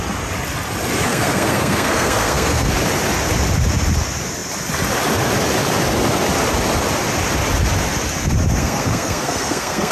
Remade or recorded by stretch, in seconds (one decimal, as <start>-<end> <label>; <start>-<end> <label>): 0.0-1.1 recorded; 1.1-2.7 remade; 2.7-8.6 recorded; 8.6-9.9 remade